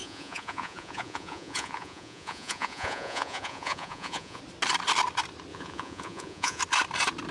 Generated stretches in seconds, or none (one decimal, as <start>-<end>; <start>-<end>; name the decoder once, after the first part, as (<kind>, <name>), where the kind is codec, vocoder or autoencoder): 0.0-4.4 (vocoder, Vocos); 5.5-6.6